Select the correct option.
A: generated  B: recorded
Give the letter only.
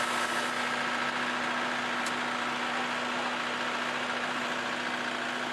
B